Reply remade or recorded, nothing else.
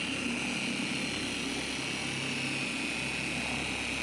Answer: recorded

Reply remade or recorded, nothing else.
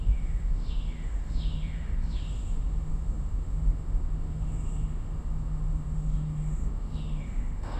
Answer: remade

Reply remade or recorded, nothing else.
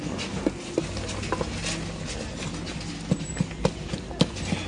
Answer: recorded